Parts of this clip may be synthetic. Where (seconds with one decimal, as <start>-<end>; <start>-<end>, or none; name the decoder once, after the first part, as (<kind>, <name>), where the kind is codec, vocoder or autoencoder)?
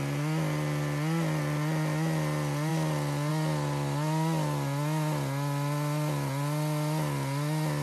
none